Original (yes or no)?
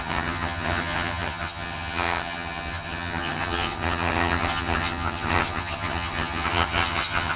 no